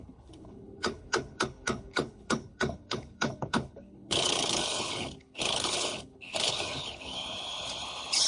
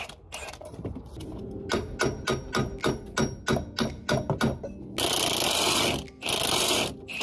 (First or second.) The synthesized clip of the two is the first